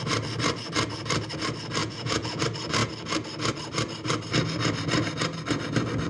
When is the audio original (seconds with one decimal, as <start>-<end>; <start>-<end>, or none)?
0.0-1.8; 2.4-6.1